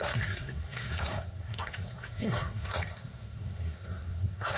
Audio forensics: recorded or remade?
remade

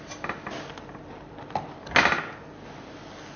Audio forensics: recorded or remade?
recorded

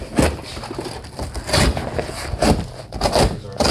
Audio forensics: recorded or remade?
recorded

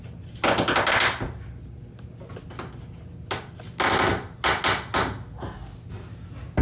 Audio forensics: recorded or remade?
recorded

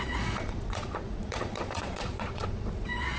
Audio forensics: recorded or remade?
remade